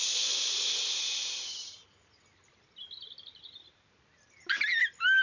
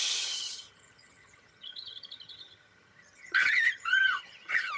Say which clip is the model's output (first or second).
second